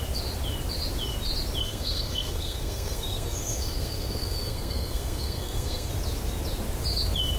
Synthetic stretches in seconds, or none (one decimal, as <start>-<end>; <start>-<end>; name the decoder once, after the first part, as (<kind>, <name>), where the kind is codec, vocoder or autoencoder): 1.6-5.9 (codec, SNAC)